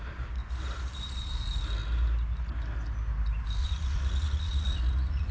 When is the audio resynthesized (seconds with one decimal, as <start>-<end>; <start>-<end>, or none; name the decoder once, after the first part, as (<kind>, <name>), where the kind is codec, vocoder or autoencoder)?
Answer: 3.6-5.3 (vocoder, Vocos)